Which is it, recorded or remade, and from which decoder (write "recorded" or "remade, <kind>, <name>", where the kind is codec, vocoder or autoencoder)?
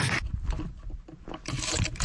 remade, vocoder, BigVGAN v2